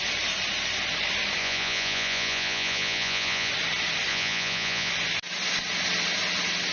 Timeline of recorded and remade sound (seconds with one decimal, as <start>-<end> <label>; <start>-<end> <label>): 0.0-1.4 recorded; 1.4-3.5 remade; 3.5-4.1 recorded; 4.1-4.9 remade; 4.9-6.7 recorded

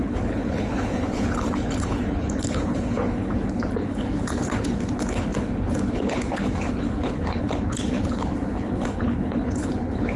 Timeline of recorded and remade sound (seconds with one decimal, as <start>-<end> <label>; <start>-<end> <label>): 0.0-10.2 remade

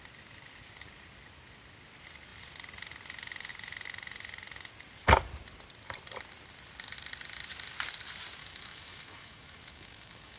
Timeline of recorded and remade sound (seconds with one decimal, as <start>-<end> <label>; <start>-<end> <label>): 0.0-8.4 recorded; 8.4-10.4 remade

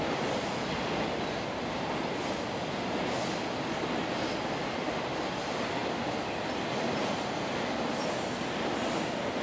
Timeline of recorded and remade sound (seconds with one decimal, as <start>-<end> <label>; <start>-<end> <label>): 0.0-9.4 recorded

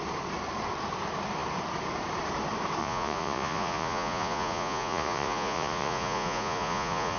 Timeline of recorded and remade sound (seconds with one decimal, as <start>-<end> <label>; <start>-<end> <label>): 0.0-2.8 recorded; 2.8-7.2 remade